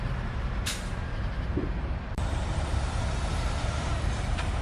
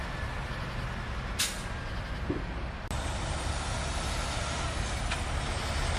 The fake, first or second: first